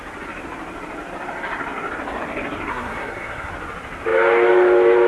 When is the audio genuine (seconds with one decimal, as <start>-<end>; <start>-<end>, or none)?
0.0-2.7; 3.5-5.1